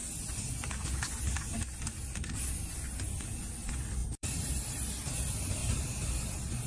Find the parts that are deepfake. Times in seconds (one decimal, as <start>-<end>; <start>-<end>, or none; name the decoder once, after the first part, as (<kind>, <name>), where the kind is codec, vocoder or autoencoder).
4.0-4.5 (vocoder, BigVGAN v2); 5.6-6.2